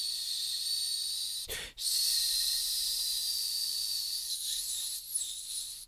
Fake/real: fake